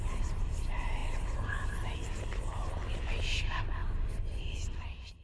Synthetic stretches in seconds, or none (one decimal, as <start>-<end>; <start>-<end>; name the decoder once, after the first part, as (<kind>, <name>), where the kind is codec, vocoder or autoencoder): none